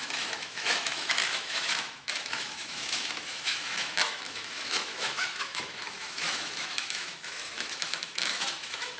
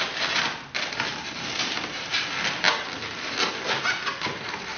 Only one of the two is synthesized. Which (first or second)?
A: first